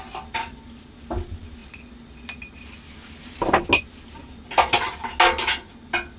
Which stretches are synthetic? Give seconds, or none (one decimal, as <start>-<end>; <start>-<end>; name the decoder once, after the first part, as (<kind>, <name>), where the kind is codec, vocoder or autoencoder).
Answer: none